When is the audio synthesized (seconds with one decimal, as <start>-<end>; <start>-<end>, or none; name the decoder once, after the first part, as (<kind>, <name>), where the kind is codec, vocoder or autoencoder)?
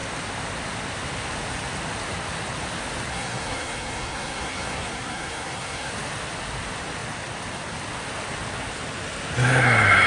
3.1-5.9 (codec, SNAC)